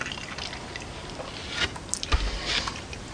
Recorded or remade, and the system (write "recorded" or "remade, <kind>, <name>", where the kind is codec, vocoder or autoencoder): recorded